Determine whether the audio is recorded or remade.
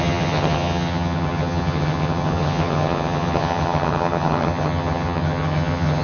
remade